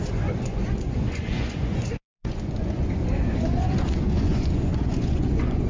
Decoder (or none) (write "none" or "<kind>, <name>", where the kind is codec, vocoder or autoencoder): vocoder, Vocos